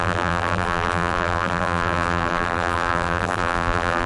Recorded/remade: remade